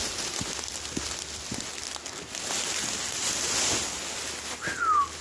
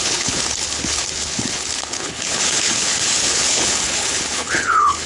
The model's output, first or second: second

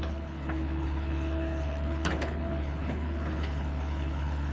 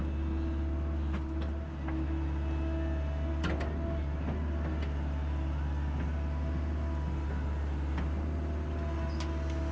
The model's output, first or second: first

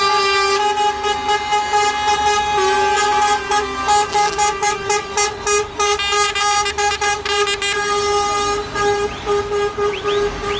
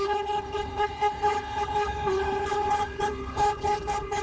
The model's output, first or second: second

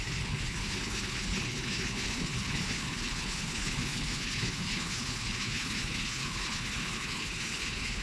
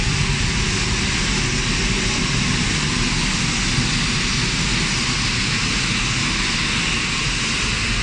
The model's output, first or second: first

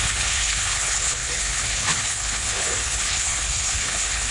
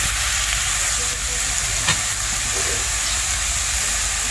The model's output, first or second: first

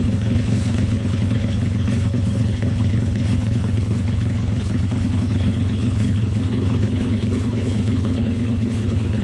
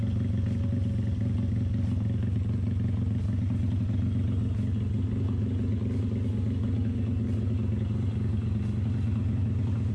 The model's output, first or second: first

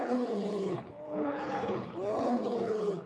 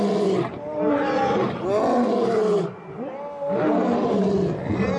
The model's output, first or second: first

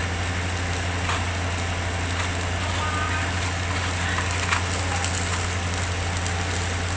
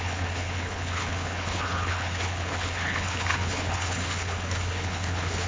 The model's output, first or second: second